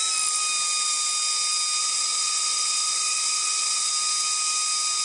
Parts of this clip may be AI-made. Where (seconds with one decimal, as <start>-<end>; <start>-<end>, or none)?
1.8-3.9